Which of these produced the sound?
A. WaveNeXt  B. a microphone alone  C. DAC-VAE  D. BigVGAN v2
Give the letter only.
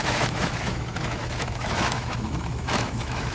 C